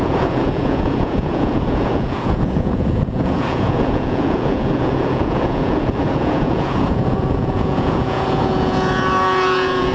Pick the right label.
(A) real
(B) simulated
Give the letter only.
B